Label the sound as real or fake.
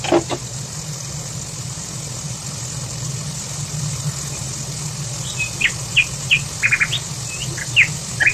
real